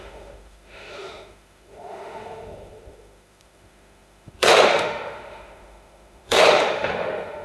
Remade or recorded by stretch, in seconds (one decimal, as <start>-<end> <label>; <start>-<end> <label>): 0.0-7.4 remade